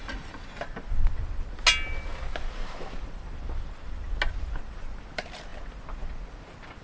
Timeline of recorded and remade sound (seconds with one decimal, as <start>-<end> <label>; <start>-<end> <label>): 0.0-6.8 recorded